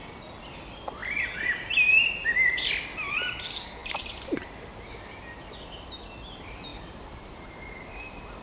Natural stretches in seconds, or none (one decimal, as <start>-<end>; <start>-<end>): 0.0-1.0; 2.7-3.8; 4.5-6.7; 7.4-8.4